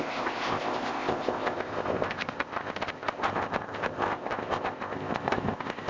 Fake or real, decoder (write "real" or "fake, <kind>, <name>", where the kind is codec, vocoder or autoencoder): fake, codec, ZipCodec